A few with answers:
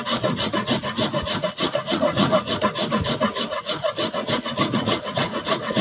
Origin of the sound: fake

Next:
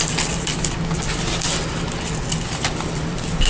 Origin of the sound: real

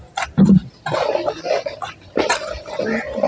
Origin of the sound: real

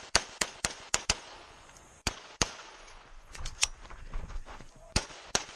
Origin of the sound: fake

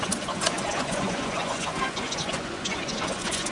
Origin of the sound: fake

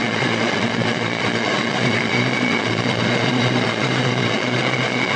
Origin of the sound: fake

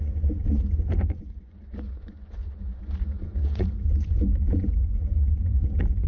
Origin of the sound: fake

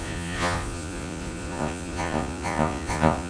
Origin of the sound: fake